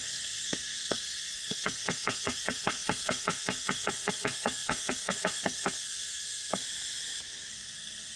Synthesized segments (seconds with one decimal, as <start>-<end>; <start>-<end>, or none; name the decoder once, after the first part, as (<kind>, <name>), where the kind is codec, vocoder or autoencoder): 0.0-6.6 (codec, SNAC); 7.5-8.2